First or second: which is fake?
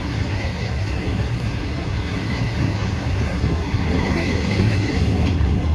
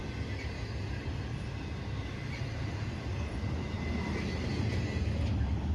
first